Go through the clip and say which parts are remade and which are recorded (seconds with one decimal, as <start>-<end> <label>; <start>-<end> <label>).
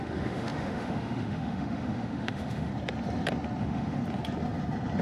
0.0-2.7 remade; 2.7-3.6 recorded; 3.6-4.0 remade; 4.0-5.0 recorded